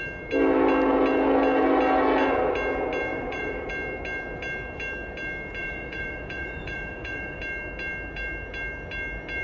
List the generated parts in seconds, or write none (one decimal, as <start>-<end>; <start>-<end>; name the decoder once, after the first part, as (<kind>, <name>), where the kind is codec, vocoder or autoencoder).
3.1-3.7 (vocoder, Vocos); 5.6-7.4